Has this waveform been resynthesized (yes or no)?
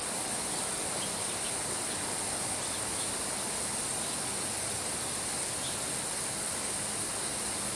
no